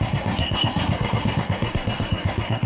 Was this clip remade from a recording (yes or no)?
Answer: yes